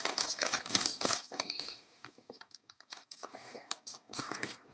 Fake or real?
fake